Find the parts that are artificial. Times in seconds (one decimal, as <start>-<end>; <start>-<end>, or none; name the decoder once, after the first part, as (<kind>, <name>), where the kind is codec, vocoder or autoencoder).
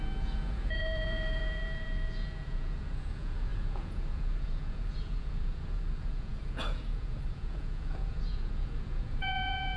0.0-9.8 (vocoder, Vocos)